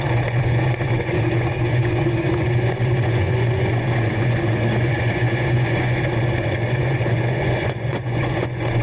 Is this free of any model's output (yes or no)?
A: no